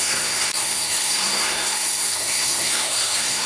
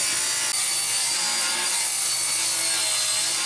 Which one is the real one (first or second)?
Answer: second